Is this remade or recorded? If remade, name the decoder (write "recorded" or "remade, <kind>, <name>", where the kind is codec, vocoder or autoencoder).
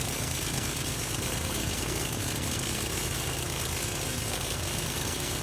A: remade, codec, SNAC